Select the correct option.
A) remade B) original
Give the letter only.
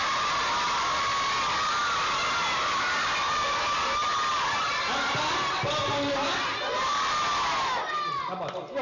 B